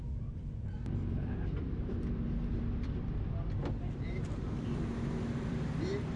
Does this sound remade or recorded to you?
remade